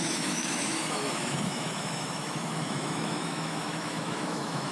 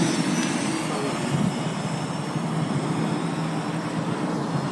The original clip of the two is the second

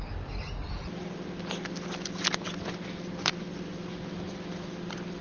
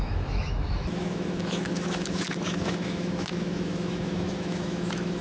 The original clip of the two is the first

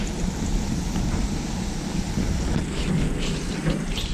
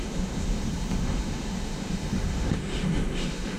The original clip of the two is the first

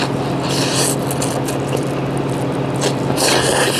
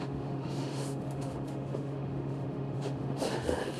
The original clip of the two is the first